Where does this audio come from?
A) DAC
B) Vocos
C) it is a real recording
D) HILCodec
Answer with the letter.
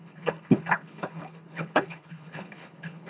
D